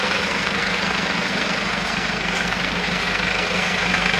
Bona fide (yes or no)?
no